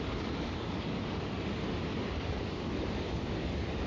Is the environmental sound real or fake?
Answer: fake